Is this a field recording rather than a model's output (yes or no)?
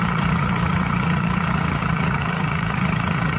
no